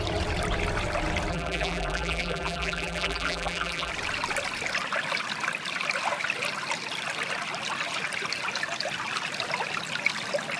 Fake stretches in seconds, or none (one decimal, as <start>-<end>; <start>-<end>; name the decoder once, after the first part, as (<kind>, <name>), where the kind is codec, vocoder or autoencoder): 1.3-3.9 (vocoder, BigVGAN v2)